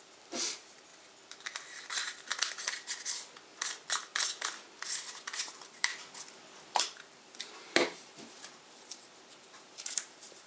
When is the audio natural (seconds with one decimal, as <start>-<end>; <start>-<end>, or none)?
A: 0.9-5.4; 5.9-6.8